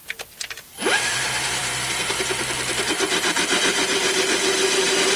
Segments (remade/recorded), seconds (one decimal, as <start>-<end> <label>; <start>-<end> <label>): 0.0-5.2 remade